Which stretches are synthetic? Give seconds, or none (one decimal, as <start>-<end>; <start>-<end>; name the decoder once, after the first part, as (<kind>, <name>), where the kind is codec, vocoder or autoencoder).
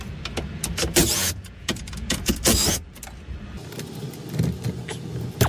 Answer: 1.0-2.3 (vocoder, Vocos)